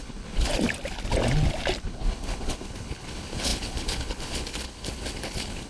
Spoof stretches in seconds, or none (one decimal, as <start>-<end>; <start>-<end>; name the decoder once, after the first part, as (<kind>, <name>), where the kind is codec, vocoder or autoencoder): 0.0-0.5 (codec, HILCodec); 1.8-5.7